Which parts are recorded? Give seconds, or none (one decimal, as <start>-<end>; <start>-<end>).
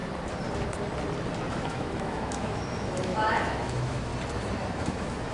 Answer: 0.0-1.5; 4.1-4.8